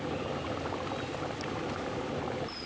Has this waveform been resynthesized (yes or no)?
no